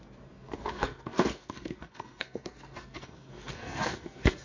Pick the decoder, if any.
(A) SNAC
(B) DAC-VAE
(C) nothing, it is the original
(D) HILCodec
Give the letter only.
A